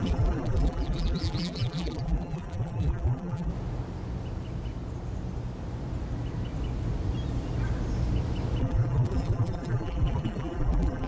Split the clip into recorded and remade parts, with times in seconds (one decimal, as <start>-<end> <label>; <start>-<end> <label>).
0.0-3.5 remade; 3.5-8.6 recorded; 8.6-11.1 remade